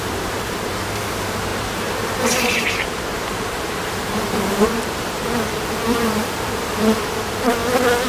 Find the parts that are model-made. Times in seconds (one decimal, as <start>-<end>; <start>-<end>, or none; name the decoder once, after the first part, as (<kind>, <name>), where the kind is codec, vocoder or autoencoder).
0.0-7.6 (vocoder, BigVGAN v2)